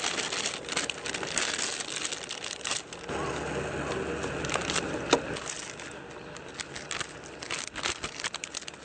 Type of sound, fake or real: real